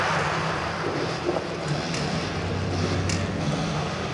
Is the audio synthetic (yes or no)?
no